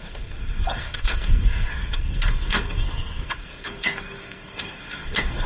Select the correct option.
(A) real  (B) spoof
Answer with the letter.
B